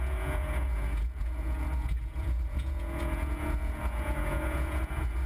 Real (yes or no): no